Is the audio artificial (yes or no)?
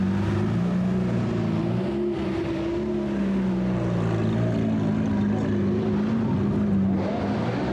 no